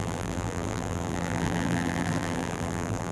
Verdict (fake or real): fake